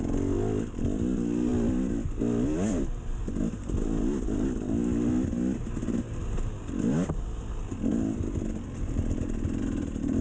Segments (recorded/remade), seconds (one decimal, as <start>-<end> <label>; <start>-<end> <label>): 0.0-10.2 recorded